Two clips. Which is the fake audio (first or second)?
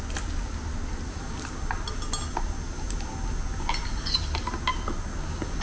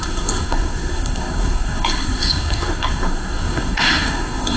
second